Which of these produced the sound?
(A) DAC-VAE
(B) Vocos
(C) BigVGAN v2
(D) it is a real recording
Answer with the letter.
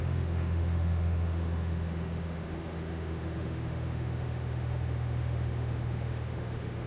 A